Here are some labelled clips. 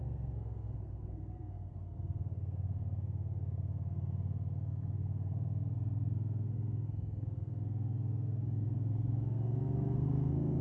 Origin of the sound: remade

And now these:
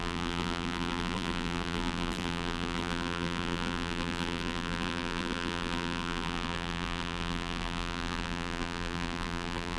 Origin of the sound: remade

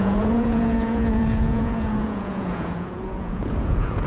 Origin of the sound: remade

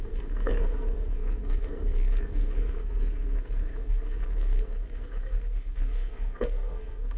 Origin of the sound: remade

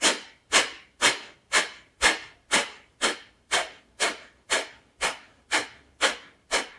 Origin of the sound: recorded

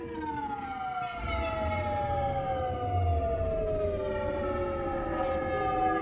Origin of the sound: recorded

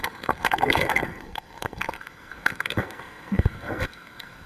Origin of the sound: remade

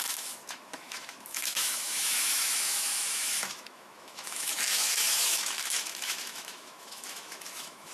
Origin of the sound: remade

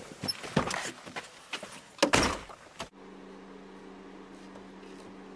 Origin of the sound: recorded